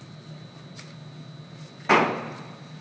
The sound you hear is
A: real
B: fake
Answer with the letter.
A